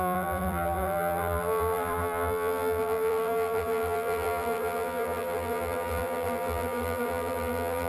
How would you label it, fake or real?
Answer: fake